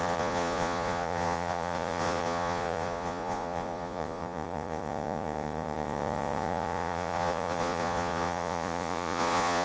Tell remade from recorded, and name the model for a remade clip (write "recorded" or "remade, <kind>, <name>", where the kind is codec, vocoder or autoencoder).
remade, vocoder, Vocos